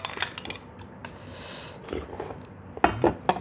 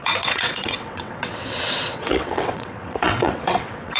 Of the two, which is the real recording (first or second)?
first